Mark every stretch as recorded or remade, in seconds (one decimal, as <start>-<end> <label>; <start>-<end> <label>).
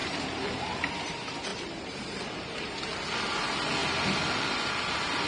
0.0-0.9 remade; 0.9-1.5 recorded; 1.5-2.8 remade; 2.8-5.3 recorded